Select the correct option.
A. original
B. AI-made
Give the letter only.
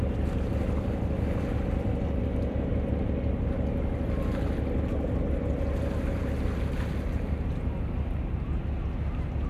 A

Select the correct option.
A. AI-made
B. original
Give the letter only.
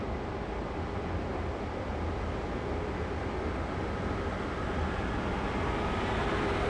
B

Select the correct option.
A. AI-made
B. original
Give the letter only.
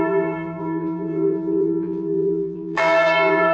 A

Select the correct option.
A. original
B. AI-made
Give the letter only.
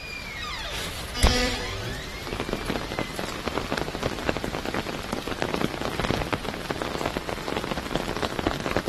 B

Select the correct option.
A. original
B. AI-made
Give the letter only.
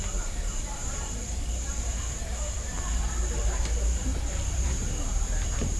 B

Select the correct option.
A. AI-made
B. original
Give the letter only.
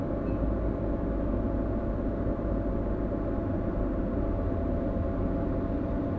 B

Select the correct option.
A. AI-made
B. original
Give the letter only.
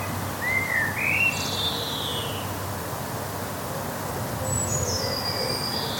B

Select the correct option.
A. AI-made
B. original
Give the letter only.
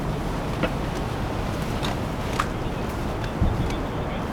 B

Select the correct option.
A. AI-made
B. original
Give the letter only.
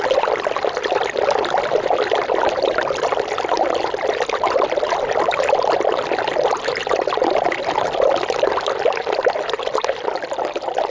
A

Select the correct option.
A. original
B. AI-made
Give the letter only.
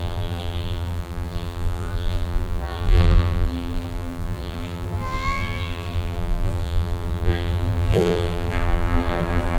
B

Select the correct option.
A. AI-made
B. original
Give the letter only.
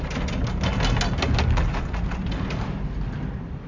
B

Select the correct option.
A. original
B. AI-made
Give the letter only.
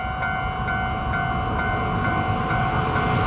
A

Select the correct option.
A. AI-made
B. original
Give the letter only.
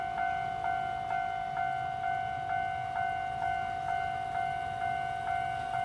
B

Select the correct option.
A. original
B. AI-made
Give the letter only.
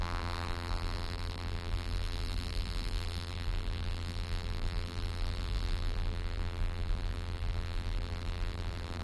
B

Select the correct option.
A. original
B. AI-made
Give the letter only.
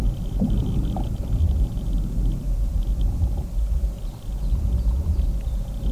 A